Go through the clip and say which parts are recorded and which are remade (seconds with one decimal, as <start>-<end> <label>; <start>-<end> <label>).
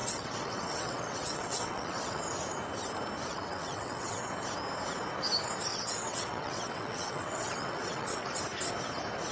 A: 0.0-2.2 remade; 2.2-3.3 recorded; 3.3-4.3 remade; 4.3-5.7 recorded; 5.7-8.4 remade; 8.4-9.3 recorded